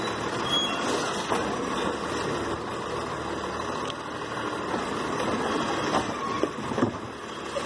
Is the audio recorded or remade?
recorded